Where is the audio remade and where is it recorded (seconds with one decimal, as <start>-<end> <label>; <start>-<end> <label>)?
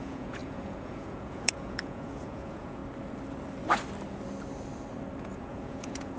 0.0-2.8 remade; 2.8-5.2 recorded; 5.2-6.2 remade